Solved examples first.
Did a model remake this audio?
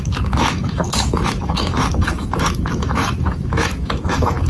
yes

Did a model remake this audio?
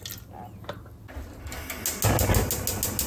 no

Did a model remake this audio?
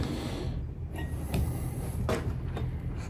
no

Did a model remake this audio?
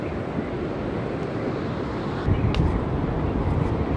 no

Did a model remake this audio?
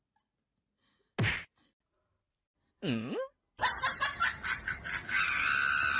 no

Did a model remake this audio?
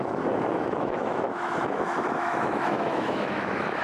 yes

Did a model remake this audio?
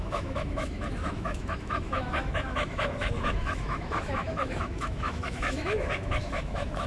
yes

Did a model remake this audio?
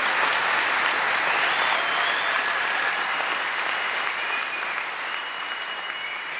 no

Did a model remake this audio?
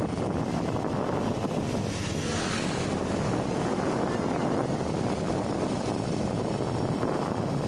no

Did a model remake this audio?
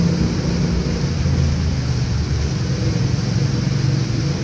no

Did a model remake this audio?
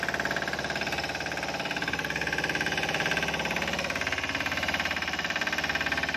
no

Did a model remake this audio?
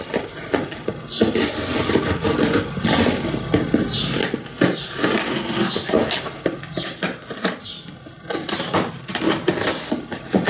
no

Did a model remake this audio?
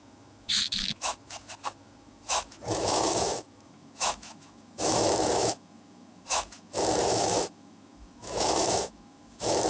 yes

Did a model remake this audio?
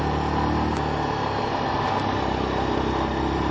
no